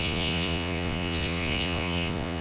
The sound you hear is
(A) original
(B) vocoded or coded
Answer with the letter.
B